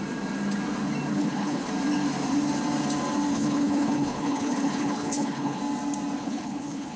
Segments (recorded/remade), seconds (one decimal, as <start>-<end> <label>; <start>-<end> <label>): 0.0-1.1 recorded; 1.1-1.7 remade; 1.7-3.3 recorded; 3.3-5.6 remade; 5.6-6.2 recorded; 6.2-7.0 remade